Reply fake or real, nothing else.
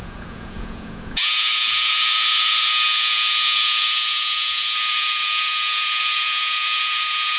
fake